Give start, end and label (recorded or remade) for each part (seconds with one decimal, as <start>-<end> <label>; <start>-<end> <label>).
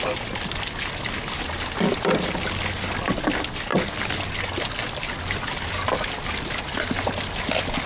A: 0.0-7.9 recorded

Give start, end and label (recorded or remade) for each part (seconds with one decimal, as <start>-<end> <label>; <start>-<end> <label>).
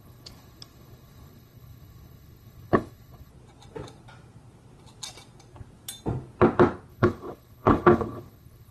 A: 0.0-3.3 remade; 3.3-6.9 recorded; 6.9-8.7 remade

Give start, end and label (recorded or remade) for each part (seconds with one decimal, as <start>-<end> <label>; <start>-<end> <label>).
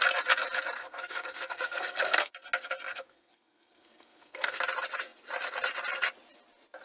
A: 0.0-0.8 recorded; 0.8-2.3 remade; 2.3-2.9 recorded; 2.9-4.6 remade; 4.6-6.8 recorded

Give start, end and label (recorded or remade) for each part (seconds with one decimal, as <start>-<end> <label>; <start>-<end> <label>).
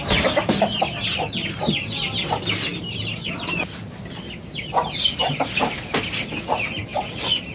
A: 0.0-7.5 recorded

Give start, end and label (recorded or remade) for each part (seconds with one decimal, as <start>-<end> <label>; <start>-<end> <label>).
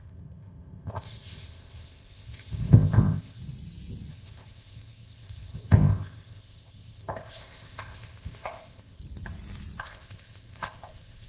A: 0.0-3.4 remade; 3.4-4.1 recorded; 4.1-9.0 remade; 9.0-9.8 recorded; 9.8-11.3 remade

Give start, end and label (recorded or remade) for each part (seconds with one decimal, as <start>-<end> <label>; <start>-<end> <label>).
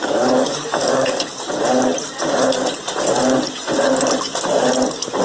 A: 0.0-1.4 remade; 1.4-5.2 recorded